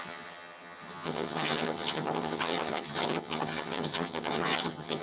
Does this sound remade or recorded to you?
remade